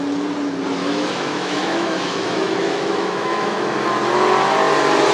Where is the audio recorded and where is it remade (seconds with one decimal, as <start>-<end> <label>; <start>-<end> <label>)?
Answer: 0.0-0.8 recorded; 0.8-3.9 remade; 3.9-5.1 recorded